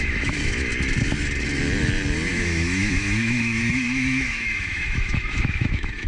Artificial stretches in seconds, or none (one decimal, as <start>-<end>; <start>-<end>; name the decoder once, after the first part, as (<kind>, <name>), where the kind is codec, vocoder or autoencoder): 0.0-0.7 (autoencoder, DAC-VAE); 2.3-6.1

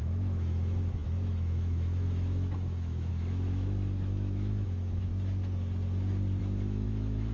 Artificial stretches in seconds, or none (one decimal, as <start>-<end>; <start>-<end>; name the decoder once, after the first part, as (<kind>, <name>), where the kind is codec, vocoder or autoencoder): 0.0-5.1 (autoencoder, DAC-VAE); 6.4-7.3

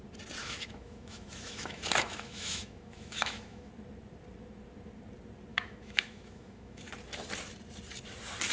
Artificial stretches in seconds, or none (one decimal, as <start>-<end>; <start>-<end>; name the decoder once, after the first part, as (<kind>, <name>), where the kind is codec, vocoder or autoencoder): 0.4-3.7 (autoencoder, DAC-VAE); 5.5-6.8

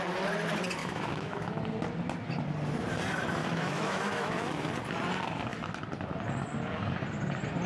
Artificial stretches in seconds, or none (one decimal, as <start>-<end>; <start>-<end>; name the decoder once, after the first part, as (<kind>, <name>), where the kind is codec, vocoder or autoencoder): 0.8-1.6 (autoencoder, DAC-VAE); 3.4-4.7